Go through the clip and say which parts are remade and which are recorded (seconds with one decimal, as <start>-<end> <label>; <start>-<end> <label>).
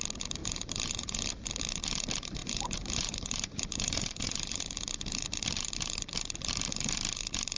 0.0-0.4 recorded; 0.4-1.3 remade; 1.3-2.4 recorded; 2.4-4.6 remade; 4.6-7.6 recorded